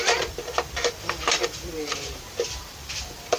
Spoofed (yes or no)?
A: yes